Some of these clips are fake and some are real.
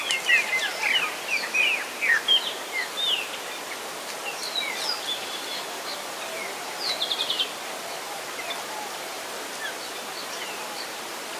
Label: real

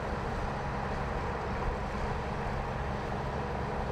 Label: real